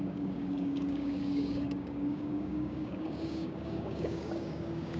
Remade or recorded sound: remade